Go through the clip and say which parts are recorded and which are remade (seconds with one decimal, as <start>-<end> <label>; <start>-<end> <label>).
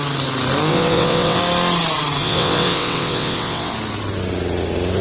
0.0-0.7 recorded; 0.7-1.4 remade; 1.4-2.2 recorded; 2.2-3.7 remade; 3.7-5.0 recorded